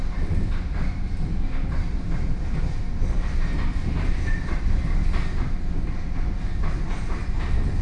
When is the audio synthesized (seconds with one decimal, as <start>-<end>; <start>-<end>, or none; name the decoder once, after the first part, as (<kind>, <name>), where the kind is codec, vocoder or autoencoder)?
none